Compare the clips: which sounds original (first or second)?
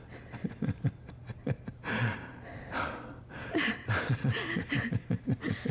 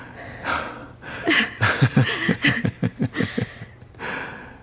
second